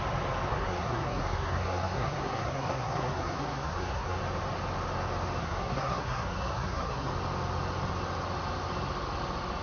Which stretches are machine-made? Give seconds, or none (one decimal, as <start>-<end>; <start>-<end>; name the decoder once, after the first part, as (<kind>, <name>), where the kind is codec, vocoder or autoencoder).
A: 0.5-4.2 (codec, SNAC); 5.4-7.1